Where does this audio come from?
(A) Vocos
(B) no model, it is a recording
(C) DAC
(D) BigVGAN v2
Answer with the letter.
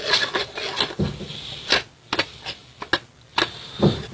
B